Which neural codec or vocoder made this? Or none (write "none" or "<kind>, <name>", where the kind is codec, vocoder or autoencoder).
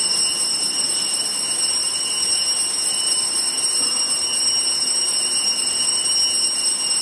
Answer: none